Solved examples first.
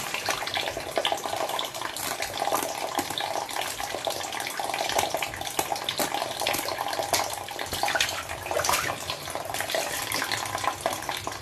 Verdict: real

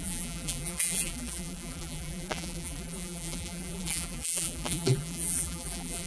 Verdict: fake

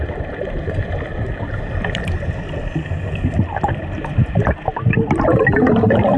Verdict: fake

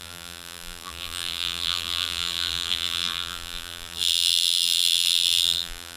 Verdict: fake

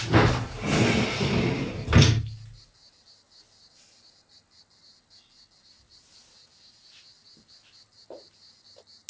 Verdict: real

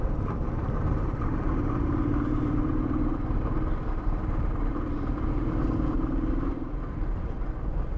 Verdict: fake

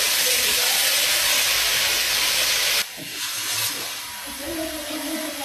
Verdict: real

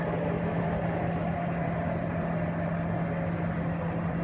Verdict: real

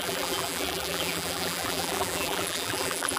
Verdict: fake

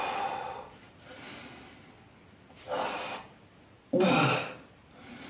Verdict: real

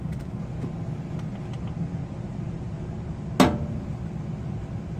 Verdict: real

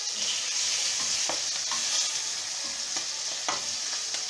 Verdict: real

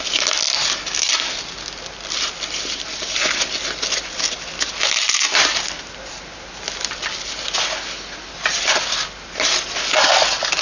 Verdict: real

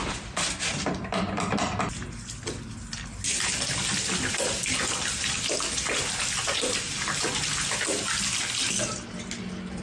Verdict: real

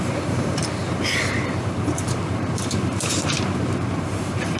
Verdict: fake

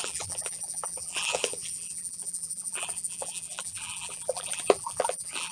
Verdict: fake